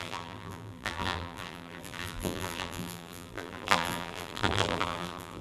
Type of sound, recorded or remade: remade